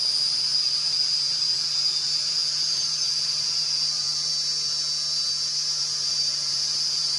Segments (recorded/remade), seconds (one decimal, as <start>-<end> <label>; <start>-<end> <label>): 0.0-4.3 remade; 4.3-5.8 recorded; 5.8-7.2 remade